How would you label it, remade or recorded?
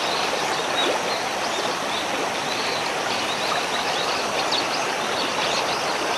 recorded